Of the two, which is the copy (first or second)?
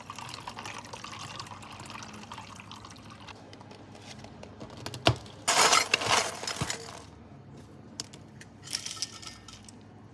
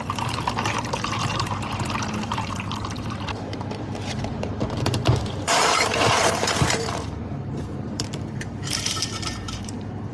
second